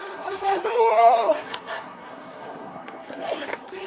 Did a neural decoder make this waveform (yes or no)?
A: yes